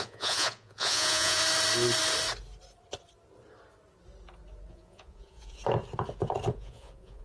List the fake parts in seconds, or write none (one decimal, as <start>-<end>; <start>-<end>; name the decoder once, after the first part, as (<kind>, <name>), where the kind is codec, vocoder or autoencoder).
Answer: 0.0-1.4 (vocoder, Vocos); 4.7-5.6; 6.5-7.2